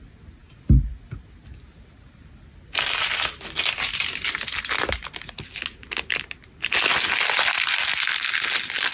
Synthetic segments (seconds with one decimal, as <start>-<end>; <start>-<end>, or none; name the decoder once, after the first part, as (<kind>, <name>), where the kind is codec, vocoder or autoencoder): none